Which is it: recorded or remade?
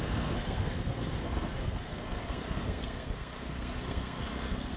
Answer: remade